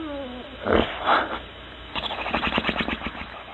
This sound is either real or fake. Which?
real